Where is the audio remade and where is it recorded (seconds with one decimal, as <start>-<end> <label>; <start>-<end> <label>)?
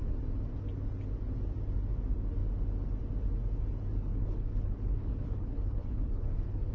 0.0-4.1 recorded; 4.1-6.7 remade